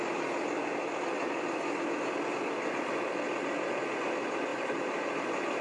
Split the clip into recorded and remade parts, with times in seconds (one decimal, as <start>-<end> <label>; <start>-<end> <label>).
0.0-5.6 recorded